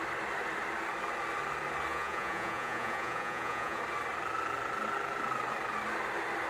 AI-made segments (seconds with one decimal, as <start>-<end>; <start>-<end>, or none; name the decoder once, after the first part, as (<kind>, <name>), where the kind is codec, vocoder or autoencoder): 1.9-3.8 (vocoder, Vocos)